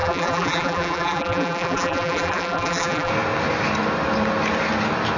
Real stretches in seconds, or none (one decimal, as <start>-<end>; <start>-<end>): 3.1-5.2